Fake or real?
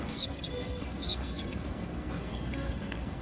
fake